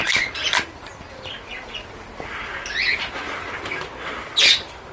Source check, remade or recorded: recorded